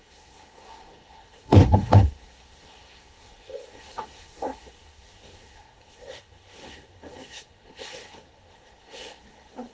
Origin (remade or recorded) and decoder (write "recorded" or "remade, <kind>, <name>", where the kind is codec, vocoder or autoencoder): remade, codec, SNAC